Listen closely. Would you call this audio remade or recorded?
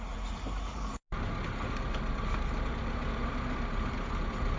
recorded